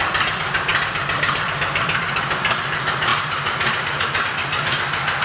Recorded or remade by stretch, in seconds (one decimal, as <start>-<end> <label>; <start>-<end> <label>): 0.0-3.1 recorded; 3.1-4.2 remade; 4.2-5.2 recorded